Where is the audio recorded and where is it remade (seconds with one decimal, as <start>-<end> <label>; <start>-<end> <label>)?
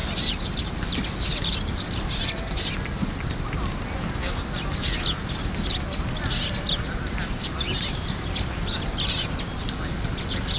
0.0-2.0 remade; 2.0-10.6 recorded